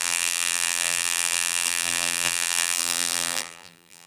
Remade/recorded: remade